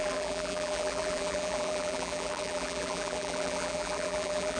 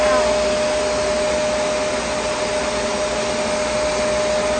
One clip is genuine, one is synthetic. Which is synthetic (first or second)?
first